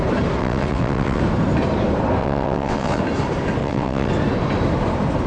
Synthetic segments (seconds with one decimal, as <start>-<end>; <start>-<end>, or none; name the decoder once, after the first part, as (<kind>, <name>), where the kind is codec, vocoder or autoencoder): 0.4-1.2 (vocoder, WaveNeXt); 2.2-3.0; 3.6-4.1